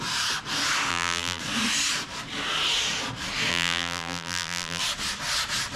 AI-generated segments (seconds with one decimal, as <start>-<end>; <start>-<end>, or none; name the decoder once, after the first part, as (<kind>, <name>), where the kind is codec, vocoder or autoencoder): 0.9-1.4 (vocoder, BigVGAN v2); 3.5-4.8